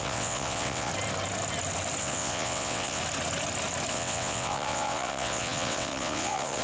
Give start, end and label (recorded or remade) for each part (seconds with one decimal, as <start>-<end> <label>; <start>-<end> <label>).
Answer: 0.0-0.9 remade; 0.9-2.0 recorded; 2.0-3.0 remade; 3.0-3.9 recorded; 3.9-6.6 remade